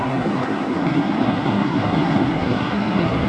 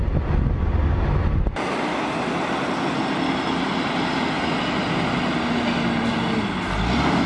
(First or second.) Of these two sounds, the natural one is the second